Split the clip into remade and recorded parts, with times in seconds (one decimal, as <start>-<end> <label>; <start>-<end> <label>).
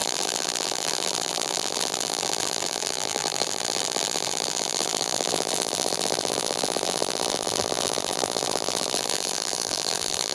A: 0.0-10.3 remade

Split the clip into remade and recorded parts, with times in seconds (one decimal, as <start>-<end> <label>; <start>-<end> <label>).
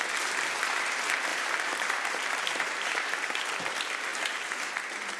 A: 0.0-1.3 recorded; 1.3-3.3 remade; 3.3-5.2 recorded